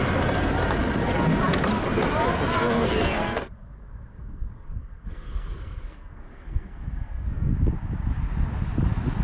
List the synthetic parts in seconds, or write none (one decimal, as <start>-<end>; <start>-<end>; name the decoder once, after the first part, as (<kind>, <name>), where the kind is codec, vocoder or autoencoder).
2.6-3.5 (codec, SNAC); 4.1-7.5